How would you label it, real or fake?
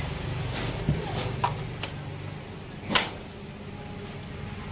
fake